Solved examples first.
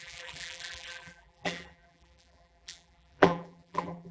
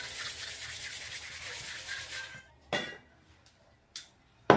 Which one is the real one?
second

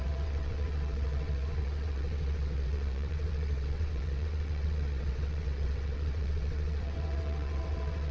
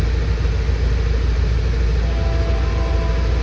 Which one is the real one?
second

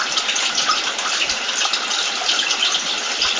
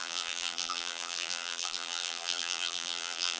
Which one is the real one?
first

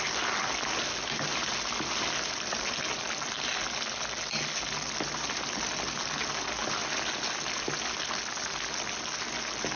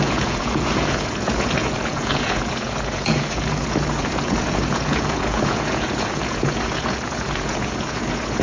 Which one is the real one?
first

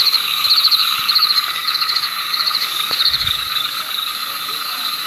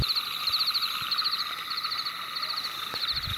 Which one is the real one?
second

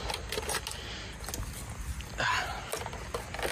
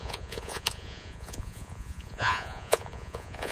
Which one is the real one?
first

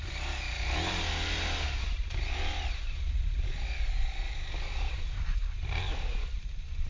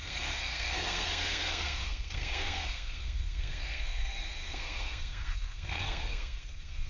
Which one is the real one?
first